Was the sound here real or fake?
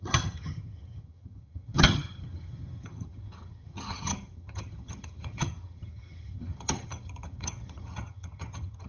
fake